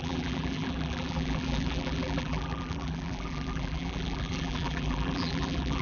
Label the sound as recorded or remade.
remade